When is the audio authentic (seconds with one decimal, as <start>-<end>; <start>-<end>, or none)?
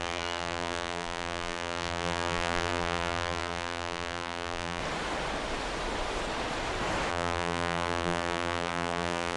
4.8-7.1